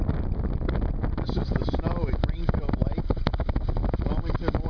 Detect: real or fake real